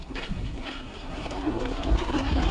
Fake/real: fake